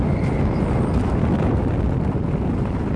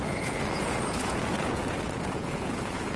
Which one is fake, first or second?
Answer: second